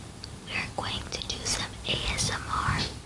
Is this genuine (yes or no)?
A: yes